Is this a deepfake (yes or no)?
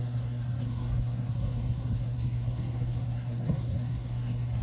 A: yes